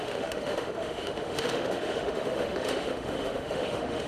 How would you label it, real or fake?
fake